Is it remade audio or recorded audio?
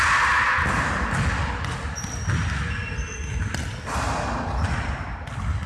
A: recorded